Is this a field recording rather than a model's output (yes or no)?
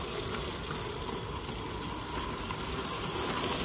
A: yes